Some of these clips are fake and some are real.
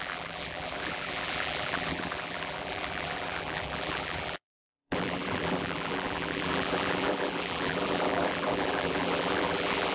fake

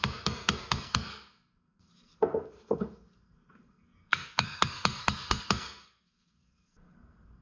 fake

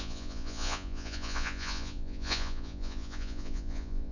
fake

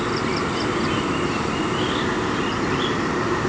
real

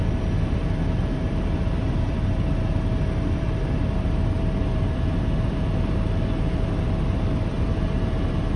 fake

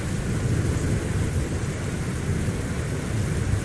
real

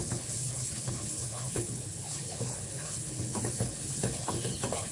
fake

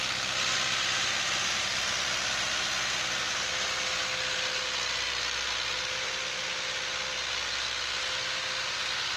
real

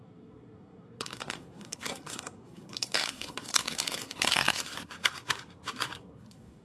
fake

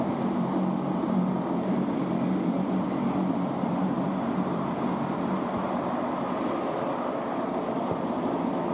fake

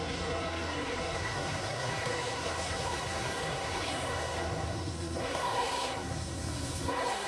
fake